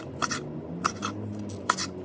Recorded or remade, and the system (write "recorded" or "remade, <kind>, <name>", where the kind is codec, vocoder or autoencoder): recorded